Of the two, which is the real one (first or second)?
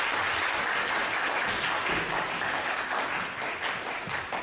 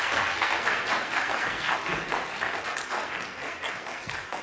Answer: first